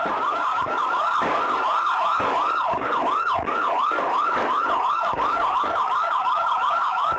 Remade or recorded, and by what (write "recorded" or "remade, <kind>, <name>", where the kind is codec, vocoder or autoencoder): remade, codec, DAC